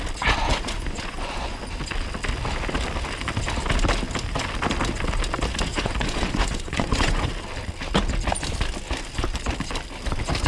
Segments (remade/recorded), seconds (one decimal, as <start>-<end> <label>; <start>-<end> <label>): 0.0-0.5 recorded; 0.5-1.6 remade; 1.6-5.7 recorded; 5.7-7.3 remade; 7.3-10.5 recorded